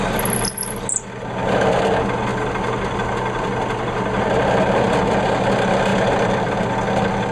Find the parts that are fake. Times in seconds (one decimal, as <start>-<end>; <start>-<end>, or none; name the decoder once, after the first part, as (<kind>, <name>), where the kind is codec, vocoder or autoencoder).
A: none